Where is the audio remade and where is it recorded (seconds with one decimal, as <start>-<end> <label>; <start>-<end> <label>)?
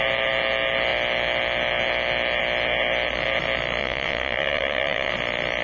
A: 0.0-3.8 recorded; 3.8-5.1 remade; 5.1-5.6 recorded